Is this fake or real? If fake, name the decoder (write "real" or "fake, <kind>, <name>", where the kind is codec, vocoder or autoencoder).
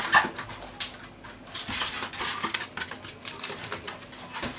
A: real